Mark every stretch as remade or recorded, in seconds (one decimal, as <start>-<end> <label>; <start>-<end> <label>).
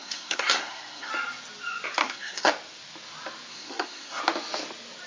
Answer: 0.0-1.1 remade; 1.1-2.0 recorded; 2.0-2.5 remade; 2.5-3.5 recorded; 3.5-4.2 remade; 4.2-5.1 recorded